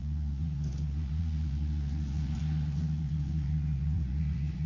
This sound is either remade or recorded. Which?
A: remade